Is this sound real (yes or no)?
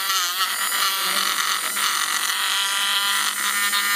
yes